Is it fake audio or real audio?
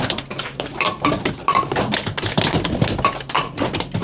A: fake